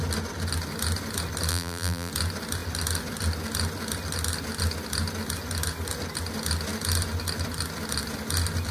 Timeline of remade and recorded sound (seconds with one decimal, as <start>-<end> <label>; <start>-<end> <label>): 0.0-1.5 recorded; 1.5-2.1 remade; 2.1-8.7 recorded